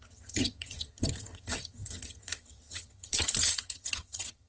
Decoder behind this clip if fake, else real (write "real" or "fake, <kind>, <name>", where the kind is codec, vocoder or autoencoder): fake, vocoder, HiFi-GAN